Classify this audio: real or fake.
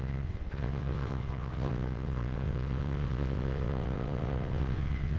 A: fake